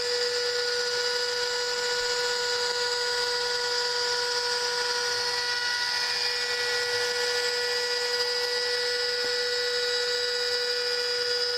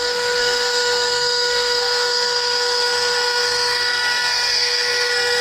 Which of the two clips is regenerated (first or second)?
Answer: second